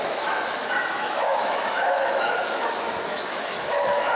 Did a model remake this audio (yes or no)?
yes